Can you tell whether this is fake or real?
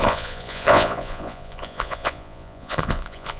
fake